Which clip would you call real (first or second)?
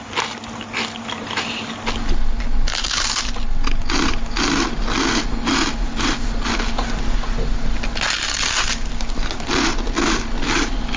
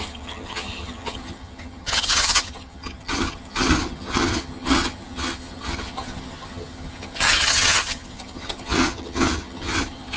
first